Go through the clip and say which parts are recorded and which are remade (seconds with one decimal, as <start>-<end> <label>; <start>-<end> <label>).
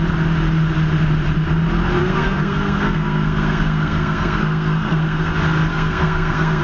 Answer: 0.0-2.0 recorded; 2.0-5.3 remade; 5.3-5.7 recorded; 5.7-6.6 remade